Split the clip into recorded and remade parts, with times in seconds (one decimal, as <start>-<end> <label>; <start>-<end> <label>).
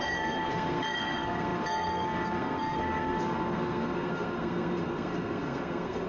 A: 0.0-6.1 remade